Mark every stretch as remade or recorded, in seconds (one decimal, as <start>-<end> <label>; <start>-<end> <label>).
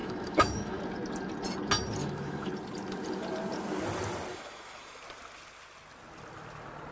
0.0-0.8 remade; 0.8-2.0 recorded; 2.0-2.5 remade; 2.5-4.3 recorded; 4.3-5.0 remade; 5.0-6.9 recorded